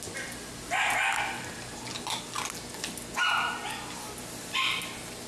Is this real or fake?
real